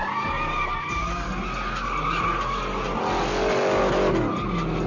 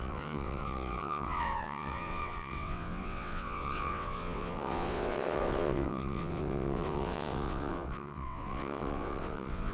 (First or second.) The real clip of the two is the first